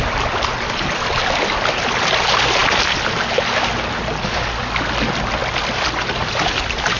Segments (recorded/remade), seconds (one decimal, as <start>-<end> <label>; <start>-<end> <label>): 0.0-7.0 recorded